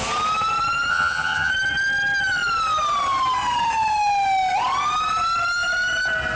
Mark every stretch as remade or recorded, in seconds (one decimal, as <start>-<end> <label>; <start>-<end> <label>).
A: 0.0-0.9 recorded; 0.9-1.5 remade; 1.5-6.4 recorded

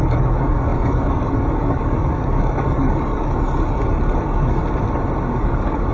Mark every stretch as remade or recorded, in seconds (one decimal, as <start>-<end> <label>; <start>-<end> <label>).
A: 0.0-4.6 remade; 4.6-5.3 recorded; 5.3-5.9 remade

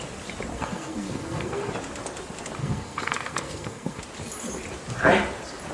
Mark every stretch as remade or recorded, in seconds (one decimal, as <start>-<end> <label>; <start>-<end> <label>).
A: 0.0-0.5 recorded; 0.5-1.7 remade; 1.7-2.6 recorded; 2.6-4.0 remade; 4.0-5.7 recorded

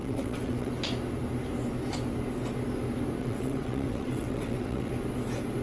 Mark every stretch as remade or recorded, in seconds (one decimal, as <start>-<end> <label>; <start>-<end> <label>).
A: 0.0-0.7 remade; 0.7-3.2 recorded; 3.2-4.9 remade; 4.9-5.6 recorded